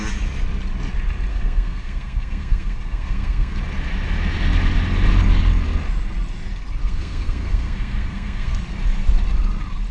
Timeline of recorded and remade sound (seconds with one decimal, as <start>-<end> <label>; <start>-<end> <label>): 0.0-1.3 recorded; 1.3-3.6 remade; 3.6-6.8 recorded; 6.8-8.6 remade; 8.6-9.9 recorded